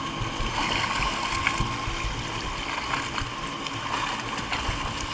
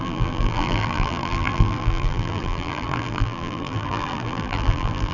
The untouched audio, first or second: first